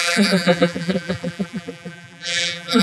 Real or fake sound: fake